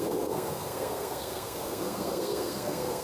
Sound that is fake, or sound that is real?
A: fake